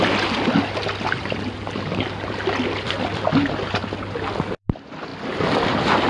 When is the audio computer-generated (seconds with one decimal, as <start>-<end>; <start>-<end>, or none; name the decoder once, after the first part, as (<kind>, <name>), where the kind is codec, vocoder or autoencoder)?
none

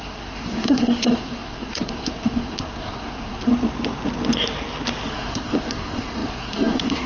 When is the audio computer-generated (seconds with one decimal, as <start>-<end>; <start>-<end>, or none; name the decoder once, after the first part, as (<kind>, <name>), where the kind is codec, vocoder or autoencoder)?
0.0-3.5 (codec, SNAC); 5.1-7.1

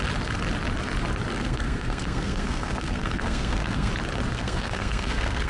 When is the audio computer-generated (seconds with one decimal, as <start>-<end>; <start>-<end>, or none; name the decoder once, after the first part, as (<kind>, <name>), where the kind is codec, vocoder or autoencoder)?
1.3-3.9 (codec, SNAC); 4.3-5.5

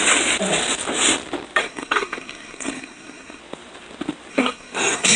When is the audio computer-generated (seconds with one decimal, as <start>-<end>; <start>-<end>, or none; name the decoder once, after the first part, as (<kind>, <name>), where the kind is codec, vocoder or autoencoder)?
1.6-3.4 (codec, SNAC); 4.3-5.2

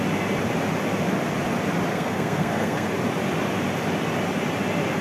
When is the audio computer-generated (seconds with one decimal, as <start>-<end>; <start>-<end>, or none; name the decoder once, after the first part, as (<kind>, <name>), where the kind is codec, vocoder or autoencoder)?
1.9-2.9 (codec, SNAC)

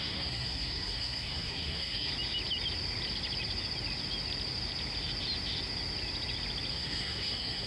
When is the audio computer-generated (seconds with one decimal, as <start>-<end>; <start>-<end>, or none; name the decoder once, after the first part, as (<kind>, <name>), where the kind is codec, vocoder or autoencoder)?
0.0-2.1 (codec, SNAC); 6.7-7.7

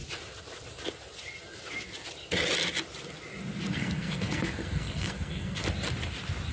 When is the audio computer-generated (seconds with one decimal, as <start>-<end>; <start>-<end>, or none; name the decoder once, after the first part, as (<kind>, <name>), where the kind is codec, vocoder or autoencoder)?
3.7-5.6 (codec, SNAC)